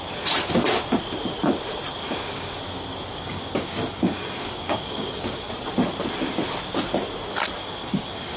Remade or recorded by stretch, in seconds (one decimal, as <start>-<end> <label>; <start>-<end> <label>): 0.0-2.0 recorded; 2.0-2.6 remade; 2.6-3.1 recorded; 3.1-5.5 remade; 5.5-7.6 recorded; 7.6-8.4 remade